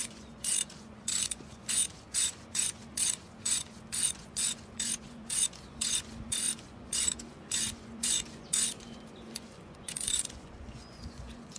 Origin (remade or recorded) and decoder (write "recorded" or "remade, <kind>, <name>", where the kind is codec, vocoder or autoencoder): remade, vocoder, Vocos